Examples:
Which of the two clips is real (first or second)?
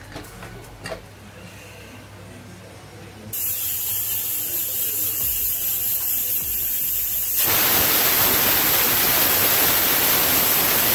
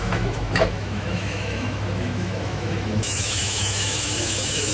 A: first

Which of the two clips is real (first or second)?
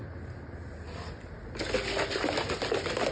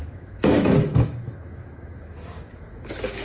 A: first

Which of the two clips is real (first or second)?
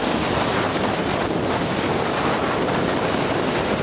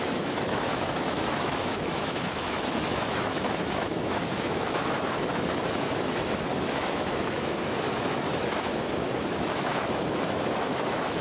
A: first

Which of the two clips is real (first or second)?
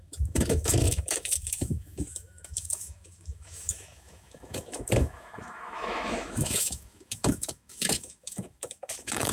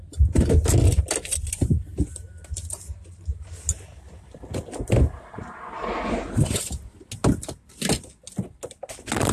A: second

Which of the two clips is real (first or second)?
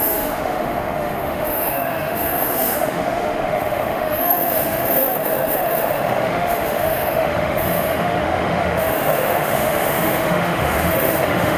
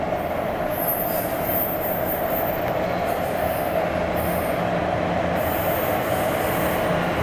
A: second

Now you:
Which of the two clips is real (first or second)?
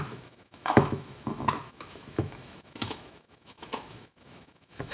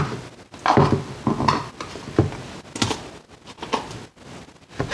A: second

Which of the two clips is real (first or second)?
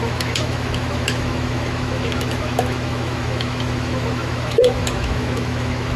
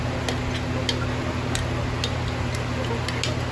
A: second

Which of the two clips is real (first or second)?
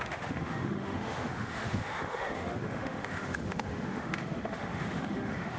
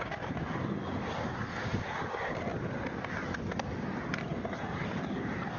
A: second